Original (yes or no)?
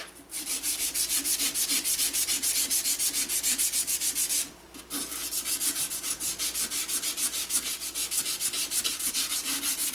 no